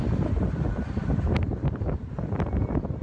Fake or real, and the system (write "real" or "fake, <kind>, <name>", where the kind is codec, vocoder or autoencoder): real